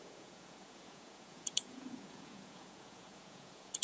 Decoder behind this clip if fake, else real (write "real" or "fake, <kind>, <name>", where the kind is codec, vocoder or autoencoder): fake, vocoder, Vocos